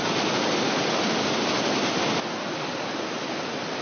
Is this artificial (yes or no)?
no